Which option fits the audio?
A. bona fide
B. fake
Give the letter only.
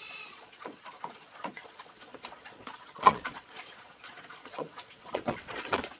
B